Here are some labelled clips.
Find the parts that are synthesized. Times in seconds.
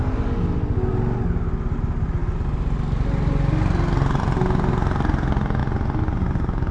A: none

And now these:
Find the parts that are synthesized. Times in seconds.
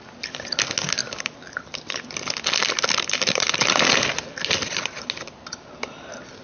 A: 1.0-4.6 (vocoder, BigVGAN v2)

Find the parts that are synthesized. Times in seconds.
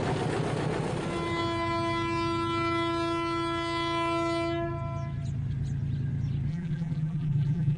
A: 6.5-7.8 (vocoder, BigVGAN v2)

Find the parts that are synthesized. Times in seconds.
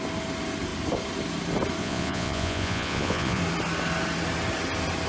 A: 1.8-3.4 (vocoder, Vocos)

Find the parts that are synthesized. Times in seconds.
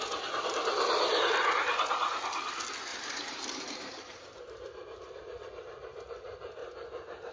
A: 2.9-6.0 (vocoder, BigVGAN v2); 6.6-7.3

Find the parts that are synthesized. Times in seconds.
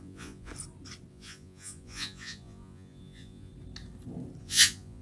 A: 0.0-0.5 (vocoder, Vocos); 1.1-3.5; 4.4-5.0